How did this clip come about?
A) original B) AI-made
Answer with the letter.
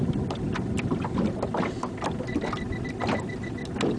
A